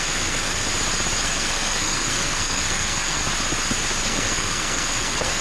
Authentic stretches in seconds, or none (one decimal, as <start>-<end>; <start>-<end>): 0.7-1.2; 3.2-4.0